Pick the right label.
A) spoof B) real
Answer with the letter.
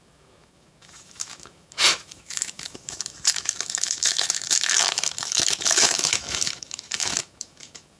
A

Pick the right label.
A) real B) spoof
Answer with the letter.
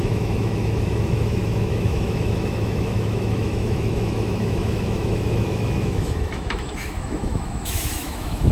B